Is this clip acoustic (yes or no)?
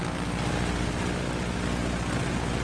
yes